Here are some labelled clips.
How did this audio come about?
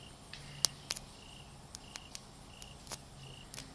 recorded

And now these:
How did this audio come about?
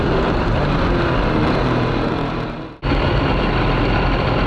recorded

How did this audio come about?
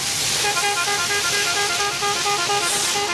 recorded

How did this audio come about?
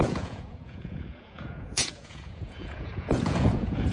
remade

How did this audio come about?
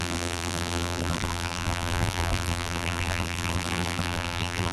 remade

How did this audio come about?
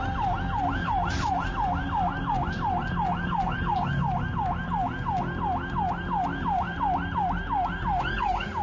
recorded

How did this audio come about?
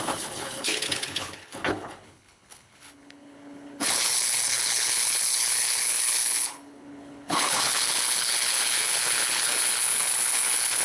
remade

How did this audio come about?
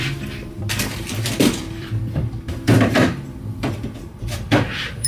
remade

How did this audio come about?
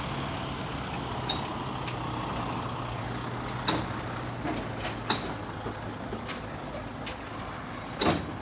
recorded